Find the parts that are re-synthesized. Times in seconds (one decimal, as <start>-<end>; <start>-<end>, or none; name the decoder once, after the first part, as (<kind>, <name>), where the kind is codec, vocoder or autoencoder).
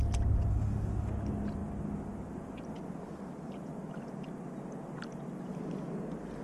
0.5-1.1 (autoencoder, DAC-VAE)